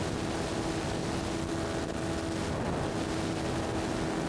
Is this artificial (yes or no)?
no